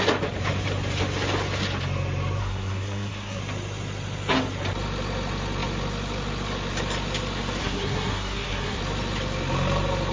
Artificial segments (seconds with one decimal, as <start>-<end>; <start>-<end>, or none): 2.4-3.4; 7.6-8.8